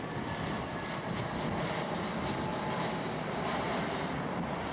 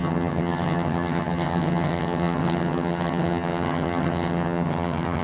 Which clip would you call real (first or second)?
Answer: first